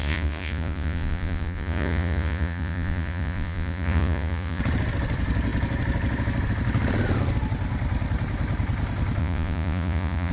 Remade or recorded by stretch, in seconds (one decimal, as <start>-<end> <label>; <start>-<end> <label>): 0.0-4.6 remade; 4.6-9.2 recorded; 9.2-10.3 remade